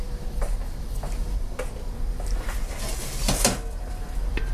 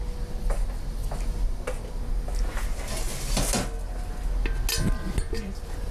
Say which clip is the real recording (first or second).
second